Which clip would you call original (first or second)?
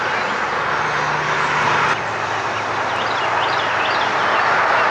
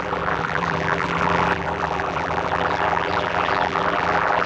first